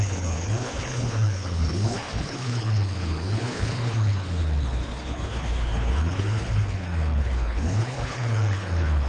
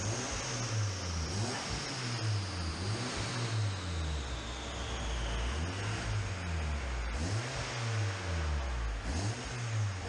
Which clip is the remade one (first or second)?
first